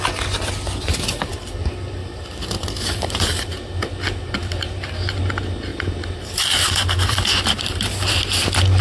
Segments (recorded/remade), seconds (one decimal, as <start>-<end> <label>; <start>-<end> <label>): 0.0-2.0 recorded; 2.0-3.8 remade; 3.8-4.4 recorded; 4.4-5.2 remade; 5.2-5.7 recorded; 5.7-8.1 remade; 8.1-8.8 recorded